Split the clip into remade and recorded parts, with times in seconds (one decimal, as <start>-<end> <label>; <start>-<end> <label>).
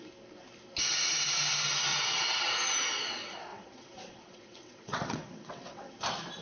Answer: 0.0-1.9 recorded; 1.9-2.5 remade; 2.5-3.5 recorded; 3.5-5.9 remade; 5.9-6.4 recorded